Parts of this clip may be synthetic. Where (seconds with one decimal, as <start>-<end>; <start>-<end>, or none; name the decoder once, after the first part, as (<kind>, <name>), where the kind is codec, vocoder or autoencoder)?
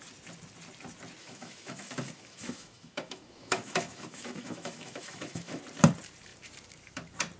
1.2-5.6 (autoencoder, DAC-VAE)